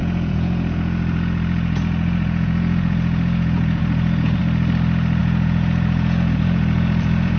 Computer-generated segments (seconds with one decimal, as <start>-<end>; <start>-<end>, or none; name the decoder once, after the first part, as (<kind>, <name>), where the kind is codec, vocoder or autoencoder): 0.0-4.4 (vocoder, Vocos); 5.2-7.4